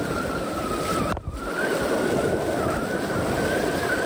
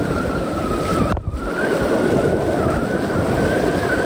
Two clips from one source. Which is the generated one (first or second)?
second